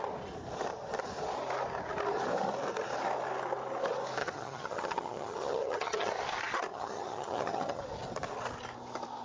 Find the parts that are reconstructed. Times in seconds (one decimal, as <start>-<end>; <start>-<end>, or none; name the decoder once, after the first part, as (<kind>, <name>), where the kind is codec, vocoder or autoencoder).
4.2-6.1 (vocoder, HiFi-GAN); 6.7-7.8